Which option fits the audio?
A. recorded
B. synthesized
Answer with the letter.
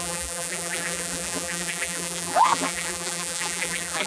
B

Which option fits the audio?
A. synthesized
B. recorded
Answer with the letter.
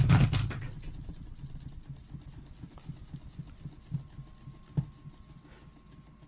B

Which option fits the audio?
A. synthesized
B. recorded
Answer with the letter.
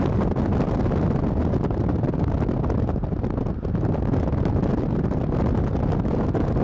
B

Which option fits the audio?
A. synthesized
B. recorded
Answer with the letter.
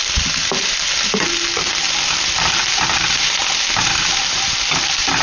B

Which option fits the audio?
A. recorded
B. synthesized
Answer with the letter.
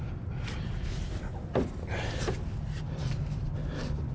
A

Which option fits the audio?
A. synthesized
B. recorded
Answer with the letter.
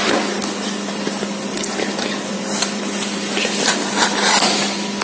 B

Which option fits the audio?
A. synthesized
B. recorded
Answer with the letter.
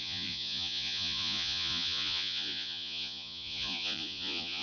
A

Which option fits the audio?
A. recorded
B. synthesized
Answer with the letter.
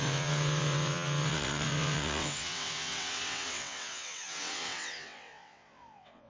B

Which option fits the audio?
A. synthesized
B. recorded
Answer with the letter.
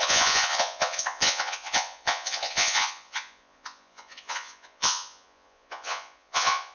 A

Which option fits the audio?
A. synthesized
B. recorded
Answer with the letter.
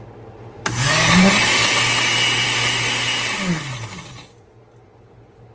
B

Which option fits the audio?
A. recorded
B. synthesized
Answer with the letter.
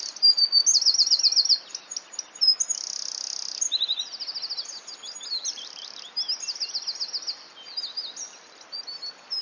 A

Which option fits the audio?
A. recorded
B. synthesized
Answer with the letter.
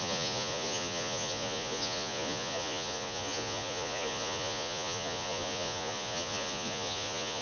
B